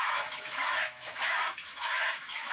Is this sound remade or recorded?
remade